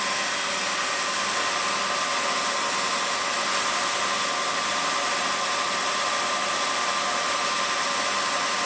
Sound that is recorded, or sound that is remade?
recorded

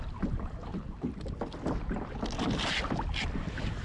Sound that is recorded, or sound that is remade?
recorded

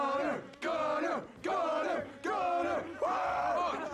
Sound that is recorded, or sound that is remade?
recorded